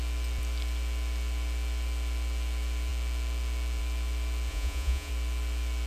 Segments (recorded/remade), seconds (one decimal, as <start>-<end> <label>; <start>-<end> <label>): 0.0-4.5 recorded; 4.5-5.1 remade; 5.1-5.9 recorded